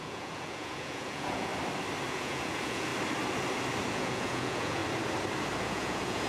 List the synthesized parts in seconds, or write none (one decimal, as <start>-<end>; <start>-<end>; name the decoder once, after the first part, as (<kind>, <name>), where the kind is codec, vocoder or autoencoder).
0.0-1.5 (vocoder, Vocos); 2.1-2.9; 3.9-4.8; 5.6-6.3